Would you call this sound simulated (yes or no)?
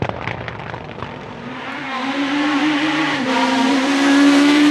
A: yes